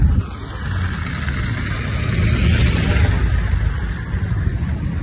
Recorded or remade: recorded